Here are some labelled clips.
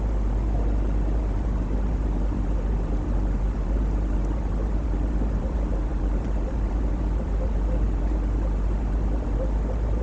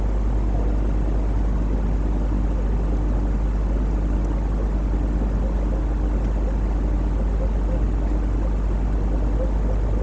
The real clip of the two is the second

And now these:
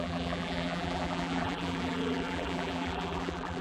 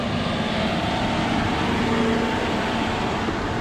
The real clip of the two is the second